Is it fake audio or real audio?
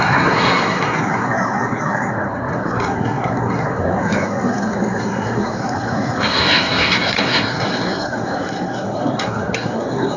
fake